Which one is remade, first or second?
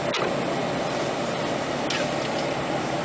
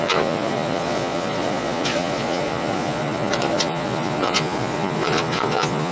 second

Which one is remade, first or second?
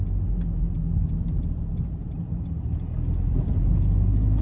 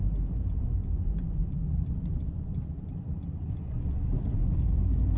second